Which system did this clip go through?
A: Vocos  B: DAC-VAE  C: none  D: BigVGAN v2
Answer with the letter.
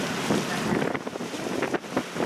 D